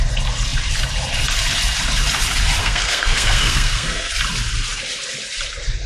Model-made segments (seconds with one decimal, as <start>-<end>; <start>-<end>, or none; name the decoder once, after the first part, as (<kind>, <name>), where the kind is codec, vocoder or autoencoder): 2.6-4.1 (codec, SNAC)